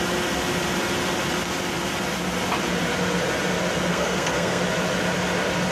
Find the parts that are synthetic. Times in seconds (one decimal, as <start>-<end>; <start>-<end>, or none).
3.9-4.6